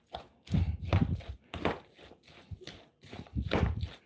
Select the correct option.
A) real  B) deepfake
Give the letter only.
A